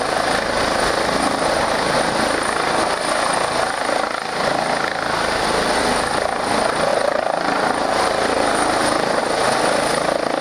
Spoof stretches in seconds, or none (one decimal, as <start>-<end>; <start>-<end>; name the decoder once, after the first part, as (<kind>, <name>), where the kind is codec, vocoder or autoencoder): 6.9-9.2 (vocoder, BigVGAN v2)